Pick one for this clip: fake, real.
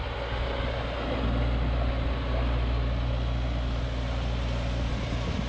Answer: real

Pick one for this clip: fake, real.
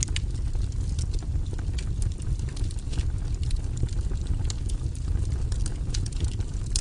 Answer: real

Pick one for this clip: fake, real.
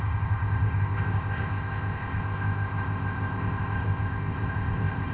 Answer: fake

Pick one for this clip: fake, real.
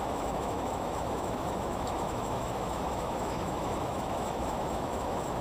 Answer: fake